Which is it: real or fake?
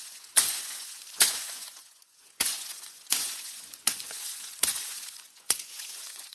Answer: fake